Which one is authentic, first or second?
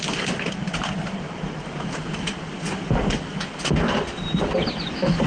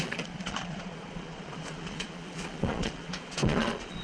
first